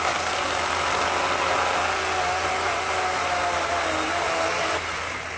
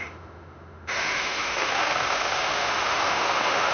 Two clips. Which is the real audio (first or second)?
first